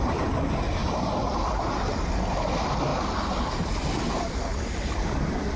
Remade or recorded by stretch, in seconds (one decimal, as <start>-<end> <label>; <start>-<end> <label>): 0.0-5.6 recorded

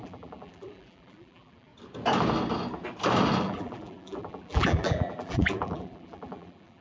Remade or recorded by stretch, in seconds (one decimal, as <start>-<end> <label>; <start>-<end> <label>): 0.0-1.7 remade; 1.7-3.4 recorded; 3.4-6.8 remade